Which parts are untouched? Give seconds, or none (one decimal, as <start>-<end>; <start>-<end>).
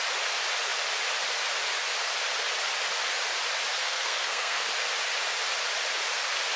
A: 0.0-3.8; 4.7-6.6